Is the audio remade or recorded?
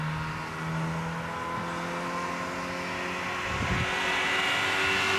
recorded